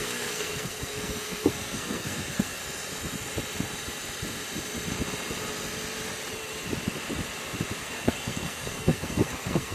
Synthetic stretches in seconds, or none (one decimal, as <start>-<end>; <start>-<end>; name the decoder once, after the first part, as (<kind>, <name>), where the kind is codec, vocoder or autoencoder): 0.0-2.6 (codec, SNAC); 7.8-9.7